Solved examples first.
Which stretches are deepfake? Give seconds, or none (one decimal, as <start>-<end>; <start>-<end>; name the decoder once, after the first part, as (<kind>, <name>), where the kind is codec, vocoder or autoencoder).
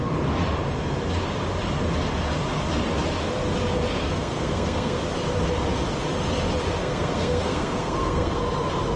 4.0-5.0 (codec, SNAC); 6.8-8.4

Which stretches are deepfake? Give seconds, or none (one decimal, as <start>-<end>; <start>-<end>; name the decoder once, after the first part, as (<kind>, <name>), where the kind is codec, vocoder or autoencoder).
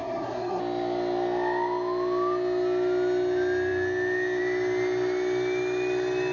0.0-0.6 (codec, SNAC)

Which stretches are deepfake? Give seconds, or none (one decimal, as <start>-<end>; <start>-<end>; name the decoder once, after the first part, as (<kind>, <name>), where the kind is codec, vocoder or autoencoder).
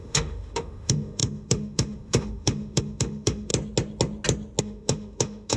0.0-3.5 (autoencoder, DAC-VAE); 4.6-5.6